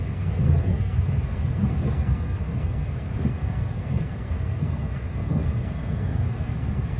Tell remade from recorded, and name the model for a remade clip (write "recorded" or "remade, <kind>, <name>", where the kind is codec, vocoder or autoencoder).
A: remade, codec, SNAC